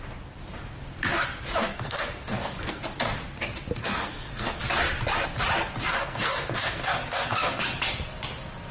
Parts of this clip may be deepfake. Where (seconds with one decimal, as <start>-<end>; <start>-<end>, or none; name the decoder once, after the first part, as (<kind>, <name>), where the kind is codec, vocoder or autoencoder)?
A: 1.6-2.8 (codec, SNAC); 3.8-4.6; 5.9-7.6